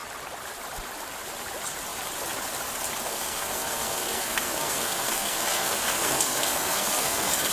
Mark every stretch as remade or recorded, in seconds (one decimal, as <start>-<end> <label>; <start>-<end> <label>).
0.0-3.1 recorded; 3.1-7.5 remade

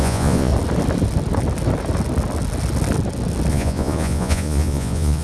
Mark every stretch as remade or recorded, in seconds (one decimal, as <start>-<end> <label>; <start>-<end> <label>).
0.0-0.5 remade; 0.5-3.5 recorded; 3.5-5.2 remade

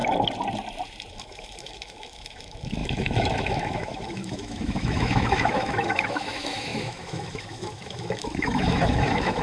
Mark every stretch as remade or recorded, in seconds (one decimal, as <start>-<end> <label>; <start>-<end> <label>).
0.0-1.2 recorded; 1.2-9.4 remade

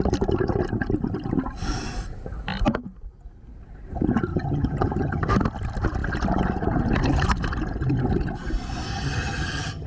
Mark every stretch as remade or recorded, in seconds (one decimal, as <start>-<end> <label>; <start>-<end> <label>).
0.0-4.3 recorded; 4.3-5.3 remade; 5.3-8.9 recorded; 8.9-9.9 remade